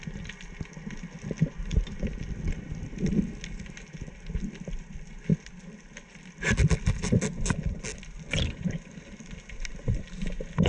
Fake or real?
real